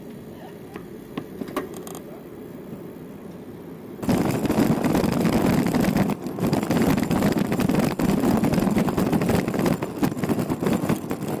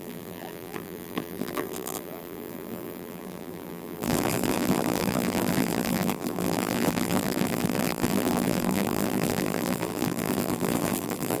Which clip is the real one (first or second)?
first